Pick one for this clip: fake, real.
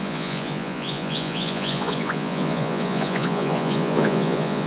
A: fake